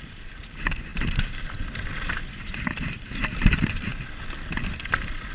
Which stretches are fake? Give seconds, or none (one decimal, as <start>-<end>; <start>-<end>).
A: 0.0-3.9; 4.8-5.3